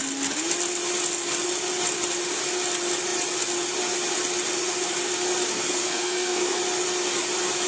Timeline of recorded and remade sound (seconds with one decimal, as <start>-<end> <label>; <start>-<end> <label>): 0.0-5.5 recorded; 5.5-6.6 remade; 6.6-7.7 recorded